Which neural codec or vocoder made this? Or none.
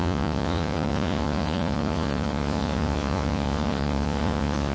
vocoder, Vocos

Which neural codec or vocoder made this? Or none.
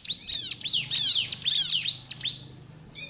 none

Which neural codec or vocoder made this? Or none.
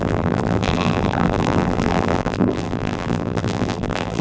vocoder, BigVGAN v2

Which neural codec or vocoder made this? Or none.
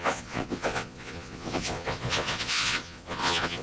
vocoder, Vocos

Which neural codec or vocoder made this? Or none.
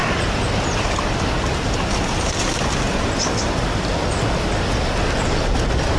none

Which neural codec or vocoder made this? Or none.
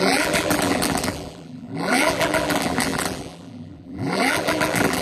vocoder, BigVGAN v2